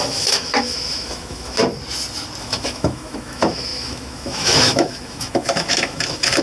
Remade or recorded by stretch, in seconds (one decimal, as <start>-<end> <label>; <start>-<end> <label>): 0.0-1.6 remade; 1.6-2.4 recorded; 2.4-6.4 remade